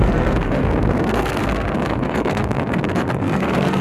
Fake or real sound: fake